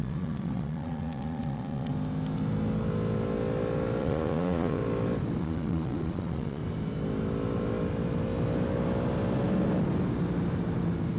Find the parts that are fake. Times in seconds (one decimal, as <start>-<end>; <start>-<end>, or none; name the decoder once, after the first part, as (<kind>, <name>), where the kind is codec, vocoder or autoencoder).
0.0-1.9 (vocoder, Vocos); 4.0-4.8; 5.4-6.6

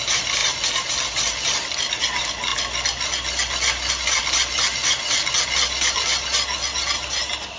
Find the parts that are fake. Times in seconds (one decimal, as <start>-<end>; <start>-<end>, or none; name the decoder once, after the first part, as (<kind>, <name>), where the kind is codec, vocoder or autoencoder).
none